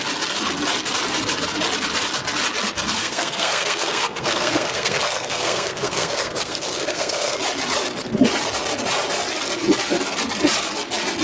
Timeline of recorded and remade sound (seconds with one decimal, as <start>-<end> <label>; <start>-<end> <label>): 0.0-3.0 recorded; 3.0-7.4 remade; 7.4-11.2 recorded